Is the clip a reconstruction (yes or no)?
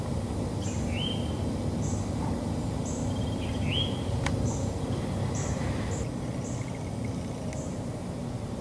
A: no